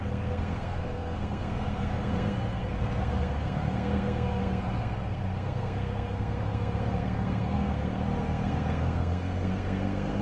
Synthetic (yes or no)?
yes